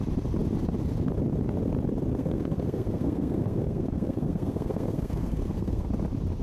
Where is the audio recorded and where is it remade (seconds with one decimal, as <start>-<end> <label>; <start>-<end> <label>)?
0.0-2.1 recorded; 2.1-5.9 remade; 5.9-6.4 recorded